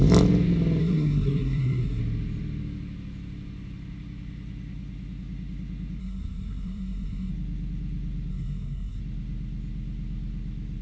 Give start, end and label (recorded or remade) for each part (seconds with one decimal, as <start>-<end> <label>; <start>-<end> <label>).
0.0-0.8 recorded; 0.8-2.0 remade; 2.0-6.0 recorded; 6.0-7.3 remade; 7.3-8.3 recorded; 8.3-9.0 remade; 9.0-10.8 recorded